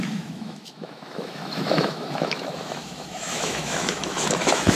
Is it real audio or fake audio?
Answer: fake